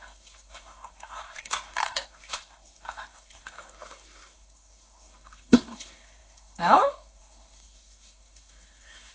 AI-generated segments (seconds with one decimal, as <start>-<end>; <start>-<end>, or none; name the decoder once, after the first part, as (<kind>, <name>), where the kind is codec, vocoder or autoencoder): 0.0-9.1 (codec, SNAC)